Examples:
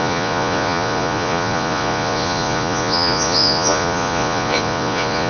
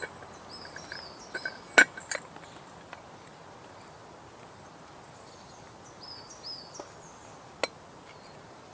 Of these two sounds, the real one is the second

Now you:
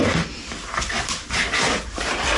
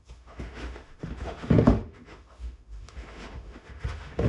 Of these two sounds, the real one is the first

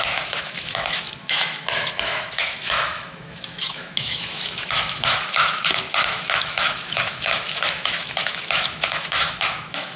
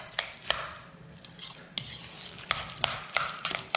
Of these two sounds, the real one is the second